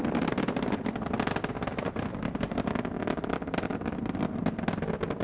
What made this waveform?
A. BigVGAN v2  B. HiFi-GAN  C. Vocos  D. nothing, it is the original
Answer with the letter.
D